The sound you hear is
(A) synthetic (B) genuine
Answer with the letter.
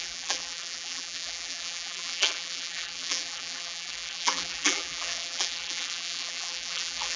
A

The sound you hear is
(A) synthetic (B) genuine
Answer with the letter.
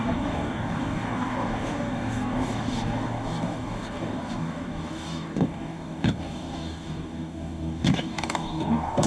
A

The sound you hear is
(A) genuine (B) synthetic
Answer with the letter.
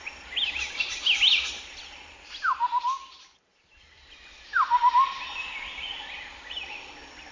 A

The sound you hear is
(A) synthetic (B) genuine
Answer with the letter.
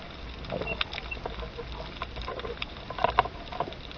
B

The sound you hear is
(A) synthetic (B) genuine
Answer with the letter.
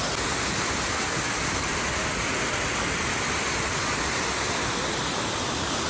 B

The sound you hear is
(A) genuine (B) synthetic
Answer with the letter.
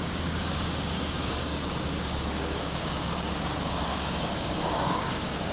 B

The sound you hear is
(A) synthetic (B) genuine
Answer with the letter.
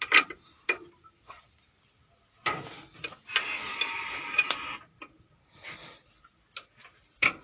B